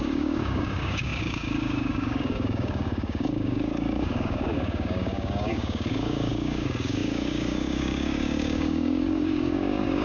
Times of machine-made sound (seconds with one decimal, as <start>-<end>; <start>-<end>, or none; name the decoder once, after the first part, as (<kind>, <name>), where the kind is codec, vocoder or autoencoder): 0.0-10.0 (codec, DAC)